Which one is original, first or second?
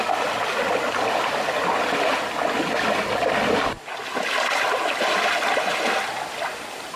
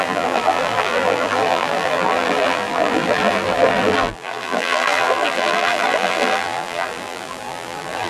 first